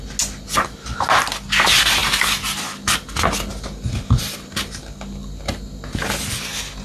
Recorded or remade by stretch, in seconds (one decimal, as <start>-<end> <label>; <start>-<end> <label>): 0.0-6.8 recorded